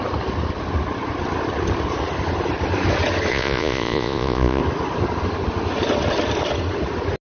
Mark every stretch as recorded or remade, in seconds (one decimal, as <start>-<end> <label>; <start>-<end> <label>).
0.0-3.3 recorded; 3.3-4.6 remade; 4.6-7.3 recorded